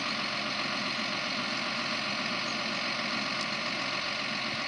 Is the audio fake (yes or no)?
no